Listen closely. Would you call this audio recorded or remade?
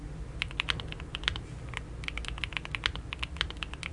recorded